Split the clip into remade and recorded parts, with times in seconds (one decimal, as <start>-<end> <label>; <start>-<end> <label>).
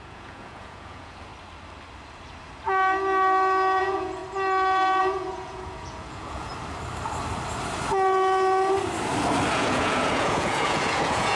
0.0-1.3 remade; 1.3-3.8 recorded; 3.8-4.2 remade; 4.2-5.0 recorded; 5.0-6.5 remade; 6.5-9.5 recorded; 9.5-11.4 remade